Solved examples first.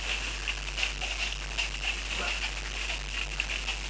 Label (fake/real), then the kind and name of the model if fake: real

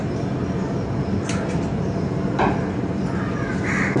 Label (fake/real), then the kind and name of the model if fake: real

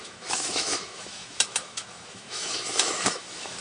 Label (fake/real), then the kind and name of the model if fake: fake, autoencoder, DAC-VAE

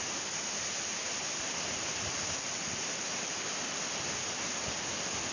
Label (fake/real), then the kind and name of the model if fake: real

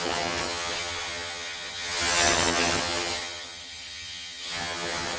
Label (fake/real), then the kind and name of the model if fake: fake, vocoder, HiFi-GAN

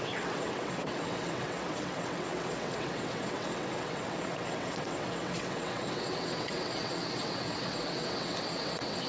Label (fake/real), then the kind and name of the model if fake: fake, vocoder, WaveNeXt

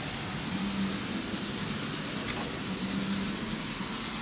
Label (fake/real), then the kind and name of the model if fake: real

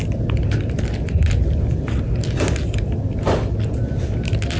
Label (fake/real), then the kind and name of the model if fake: real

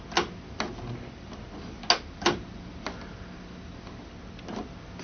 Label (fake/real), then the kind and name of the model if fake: real